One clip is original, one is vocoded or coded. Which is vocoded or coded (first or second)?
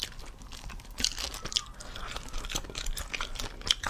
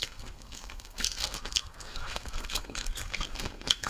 second